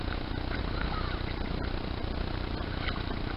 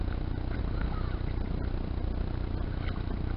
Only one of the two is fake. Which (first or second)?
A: first